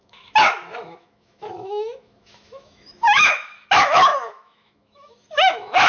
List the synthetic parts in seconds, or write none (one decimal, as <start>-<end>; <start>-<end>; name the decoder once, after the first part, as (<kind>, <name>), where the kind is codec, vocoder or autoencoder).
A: 0.0-5.9 (autoencoder, DAC-VAE)